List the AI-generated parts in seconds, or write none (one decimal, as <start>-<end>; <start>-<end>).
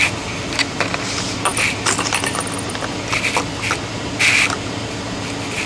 none